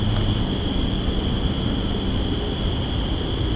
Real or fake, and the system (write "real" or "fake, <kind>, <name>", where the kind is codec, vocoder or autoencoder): real